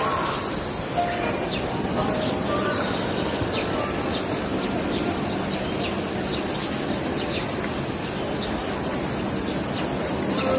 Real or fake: real